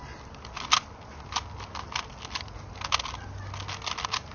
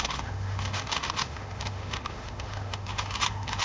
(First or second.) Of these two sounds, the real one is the first